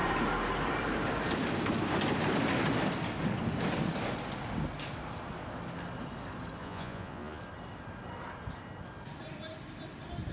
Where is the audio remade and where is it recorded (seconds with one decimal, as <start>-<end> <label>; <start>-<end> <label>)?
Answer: 0.0-6.6 recorded; 6.6-7.4 remade; 7.4-10.3 recorded